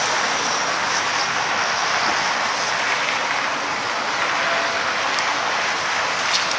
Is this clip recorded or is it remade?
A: recorded